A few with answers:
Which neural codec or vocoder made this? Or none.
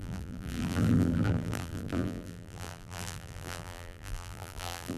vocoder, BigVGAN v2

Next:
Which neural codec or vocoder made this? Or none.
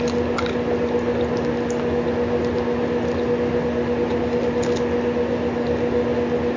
none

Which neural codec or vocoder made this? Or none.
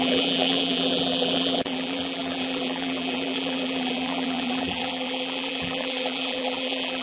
vocoder, BigVGAN v2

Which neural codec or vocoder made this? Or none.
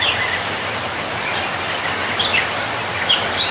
none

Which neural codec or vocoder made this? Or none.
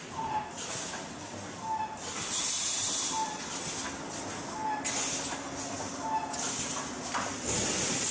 none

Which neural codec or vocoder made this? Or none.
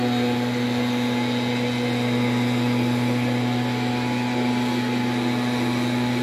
none